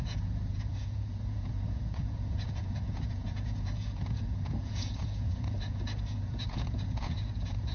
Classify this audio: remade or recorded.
remade